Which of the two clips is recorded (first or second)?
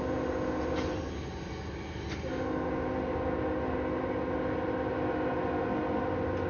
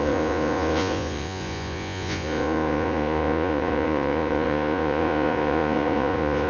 first